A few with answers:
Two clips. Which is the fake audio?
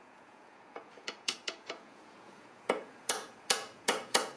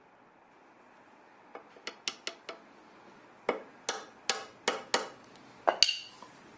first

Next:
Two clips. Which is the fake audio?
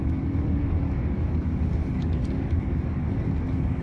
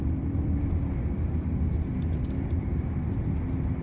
first